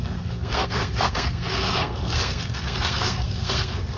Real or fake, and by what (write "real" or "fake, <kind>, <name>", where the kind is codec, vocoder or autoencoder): fake, codec, SNAC